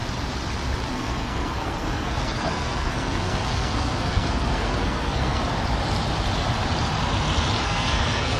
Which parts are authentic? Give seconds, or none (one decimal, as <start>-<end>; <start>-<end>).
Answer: 0.0-0.9; 5.4-7.6